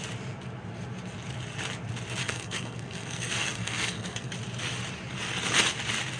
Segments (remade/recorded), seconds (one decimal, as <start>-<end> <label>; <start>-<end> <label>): 0.0-2.2 recorded; 2.2-4.3 remade; 4.3-6.2 recorded